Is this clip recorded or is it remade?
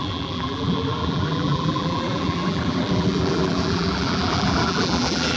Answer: remade